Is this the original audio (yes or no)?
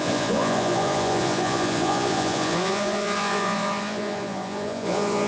no